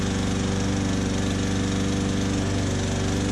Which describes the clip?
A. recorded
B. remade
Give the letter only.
A